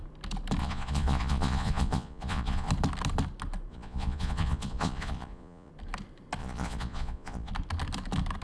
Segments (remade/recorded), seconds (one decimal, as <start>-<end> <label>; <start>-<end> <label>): 0.0-0.6 recorded; 0.6-2.7 remade; 2.7-3.7 recorded; 3.7-5.7 remade; 5.7-6.4 recorded; 6.4-7.5 remade; 7.5-8.4 recorded